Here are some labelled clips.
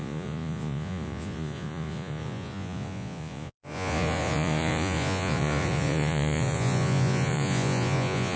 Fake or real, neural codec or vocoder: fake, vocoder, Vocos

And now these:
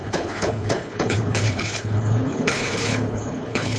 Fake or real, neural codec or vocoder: fake, codec, HILCodec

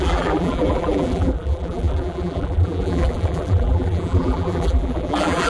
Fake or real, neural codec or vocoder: fake, vocoder, BigVGAN v2